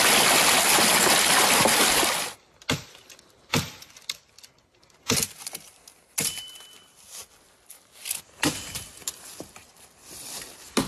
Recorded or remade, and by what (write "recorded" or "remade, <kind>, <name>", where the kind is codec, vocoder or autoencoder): recorded